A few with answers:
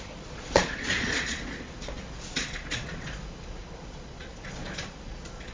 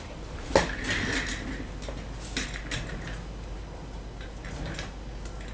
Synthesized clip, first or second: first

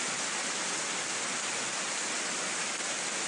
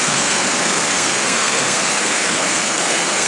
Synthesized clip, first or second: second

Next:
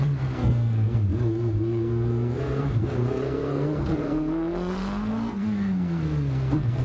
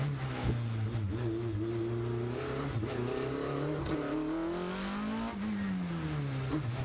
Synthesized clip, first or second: first